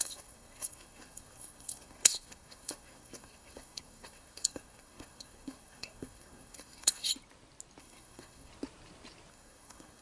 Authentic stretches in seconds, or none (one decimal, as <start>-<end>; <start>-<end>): 7.1-7.8; 8.5-9.3

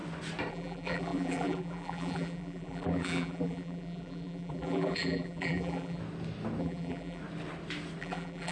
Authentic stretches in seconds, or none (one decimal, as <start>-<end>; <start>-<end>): 0.0-0.5; 6.0-6.6; 7.2-8.0

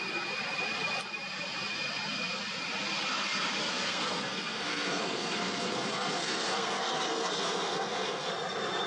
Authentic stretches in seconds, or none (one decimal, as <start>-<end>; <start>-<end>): 0.0-3.7; 8.3-8.9

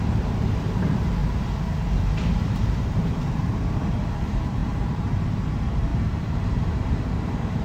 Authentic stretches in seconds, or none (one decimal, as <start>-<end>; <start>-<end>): 1.2-2.1

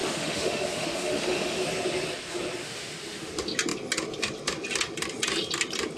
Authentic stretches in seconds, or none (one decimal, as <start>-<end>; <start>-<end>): 1.6-2.6; 3.3-6.0

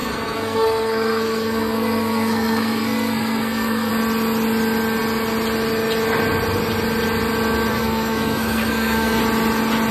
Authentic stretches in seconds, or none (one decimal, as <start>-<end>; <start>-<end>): 3.9-7.7; 9.2-9.9